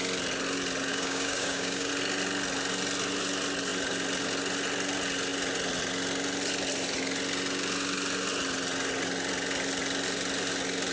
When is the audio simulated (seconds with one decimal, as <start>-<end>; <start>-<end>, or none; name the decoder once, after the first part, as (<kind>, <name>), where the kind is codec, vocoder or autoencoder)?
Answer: 0.9-1.9 (codec, DAC)